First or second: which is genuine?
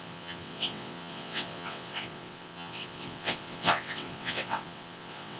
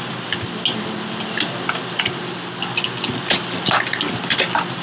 second